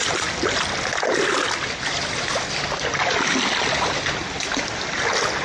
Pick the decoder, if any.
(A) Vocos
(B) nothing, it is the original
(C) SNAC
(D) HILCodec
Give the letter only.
B